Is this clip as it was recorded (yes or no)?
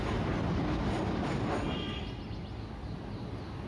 yes